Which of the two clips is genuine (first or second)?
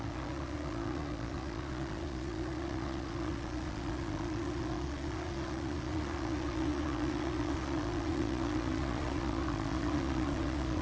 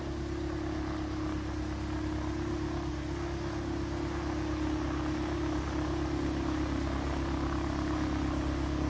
second